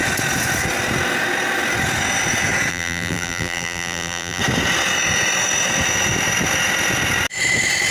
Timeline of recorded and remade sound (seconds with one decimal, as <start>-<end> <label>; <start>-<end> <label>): 0.0-2.7 recorded; 2.7-4.4 remade; 4.4-7.9 recorded